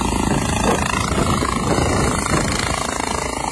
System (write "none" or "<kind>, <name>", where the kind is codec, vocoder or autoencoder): none